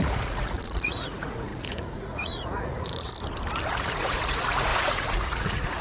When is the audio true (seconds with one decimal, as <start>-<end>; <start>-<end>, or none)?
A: 3.1-3.7